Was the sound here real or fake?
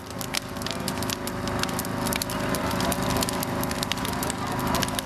real